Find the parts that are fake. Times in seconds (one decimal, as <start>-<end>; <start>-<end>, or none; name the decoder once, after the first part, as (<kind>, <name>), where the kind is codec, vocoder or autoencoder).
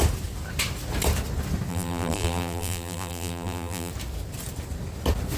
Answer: 1.7-3.9 (vocoder, BigVGAN v2)